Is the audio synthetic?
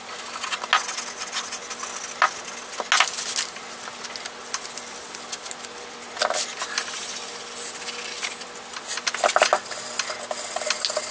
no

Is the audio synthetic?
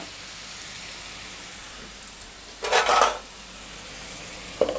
no